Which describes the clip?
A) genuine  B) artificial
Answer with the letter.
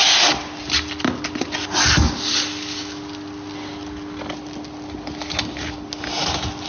A